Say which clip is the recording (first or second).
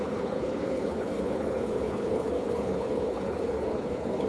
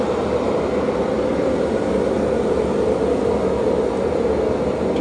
second